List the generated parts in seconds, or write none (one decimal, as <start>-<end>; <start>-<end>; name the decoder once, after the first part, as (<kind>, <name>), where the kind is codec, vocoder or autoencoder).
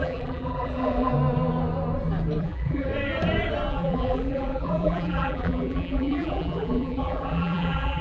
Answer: 0.0-1.1 (vocoder, BigVGAN v2); 2.4-2.9; 3.7-8.0